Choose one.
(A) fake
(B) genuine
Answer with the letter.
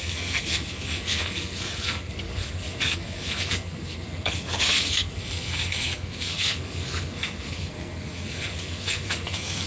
A